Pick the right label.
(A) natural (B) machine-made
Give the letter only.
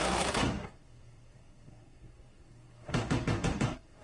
B